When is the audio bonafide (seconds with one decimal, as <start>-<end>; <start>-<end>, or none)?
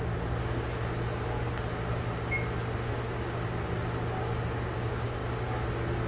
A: 0.0-6.1